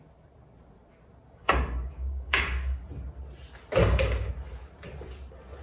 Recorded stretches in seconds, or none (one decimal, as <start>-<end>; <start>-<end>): 0.0-1.4; 2.8-3.8; 4.3-5.6